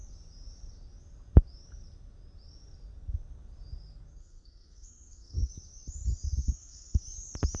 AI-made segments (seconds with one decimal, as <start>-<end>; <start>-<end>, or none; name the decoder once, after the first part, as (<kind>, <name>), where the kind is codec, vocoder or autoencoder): 4.2-5.5 (codec, SNAC); 6.4-7.0